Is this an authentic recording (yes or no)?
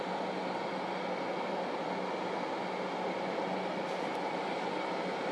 yes